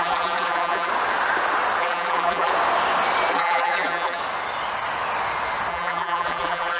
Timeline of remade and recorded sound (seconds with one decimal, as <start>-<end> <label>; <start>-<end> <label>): 0.0-0.9 remade; 0.9-1.8 recorded; 1.8-2.5 remade; 2.5-3.3 recorded; 3.3-4.2 remade; 4.2-5.7 recorded; 5.7-6.8 remade